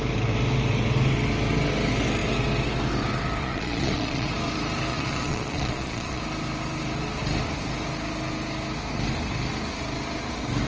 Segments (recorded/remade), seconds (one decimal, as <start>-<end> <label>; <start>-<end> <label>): 0.0-3.4 recorded; 3.4-4.3 remade; 4.3-4.9 recorded; 4.9-6.2 remade; 6.2-10.7 recorded